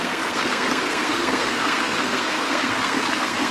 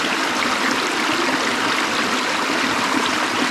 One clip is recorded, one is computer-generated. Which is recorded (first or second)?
second